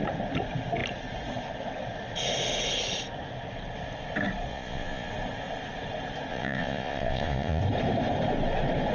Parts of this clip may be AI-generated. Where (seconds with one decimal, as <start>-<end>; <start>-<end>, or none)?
4.5-5.1; 6.3-7.6